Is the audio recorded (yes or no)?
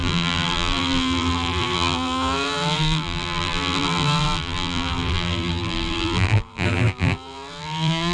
no